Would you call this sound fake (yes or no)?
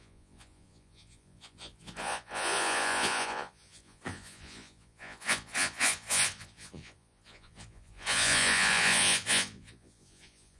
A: yes